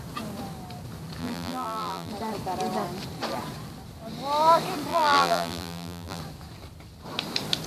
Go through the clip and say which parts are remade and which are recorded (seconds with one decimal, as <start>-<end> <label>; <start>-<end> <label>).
0.0-1.2 recorded; 1.2-2.1 remade; 2.1-4.9 recorded; 4.9-6.2 remade; 6.2-7.7 recorded